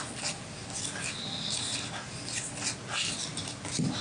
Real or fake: real